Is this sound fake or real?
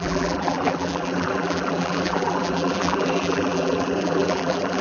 fake